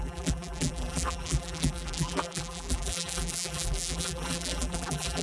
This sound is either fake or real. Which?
fake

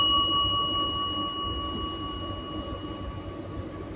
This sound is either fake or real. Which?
real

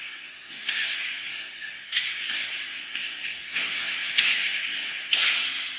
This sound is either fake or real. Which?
fake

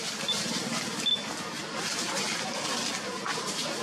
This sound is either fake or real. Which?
real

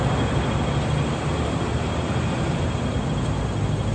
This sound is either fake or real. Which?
real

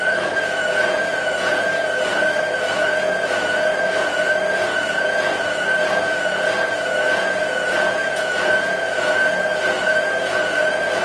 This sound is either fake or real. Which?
fake